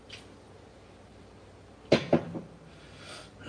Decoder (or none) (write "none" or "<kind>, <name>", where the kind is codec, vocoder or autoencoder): none